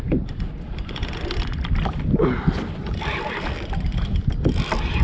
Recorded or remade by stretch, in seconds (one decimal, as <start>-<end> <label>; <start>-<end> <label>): 0.0-2.8 recorded; 2.8-4.0 remade; 4.0-5.0 recorded